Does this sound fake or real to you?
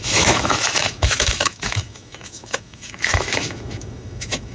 fake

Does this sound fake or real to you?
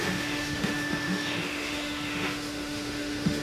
fake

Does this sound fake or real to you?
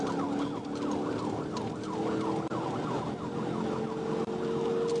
real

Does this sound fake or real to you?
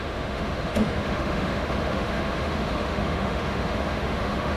fake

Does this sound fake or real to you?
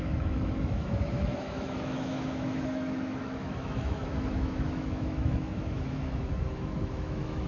fake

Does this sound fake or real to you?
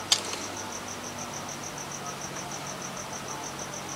real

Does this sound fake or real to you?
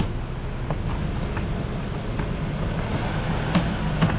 real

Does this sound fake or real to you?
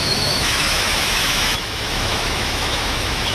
fake